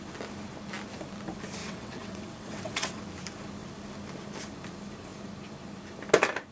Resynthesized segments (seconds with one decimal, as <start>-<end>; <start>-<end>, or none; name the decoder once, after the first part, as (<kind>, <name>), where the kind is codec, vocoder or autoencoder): 1.6-3.0 (vocoder, WaveNeXt)

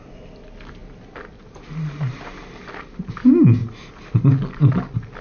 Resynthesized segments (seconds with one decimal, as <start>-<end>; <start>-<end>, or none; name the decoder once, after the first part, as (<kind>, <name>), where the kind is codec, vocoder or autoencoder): none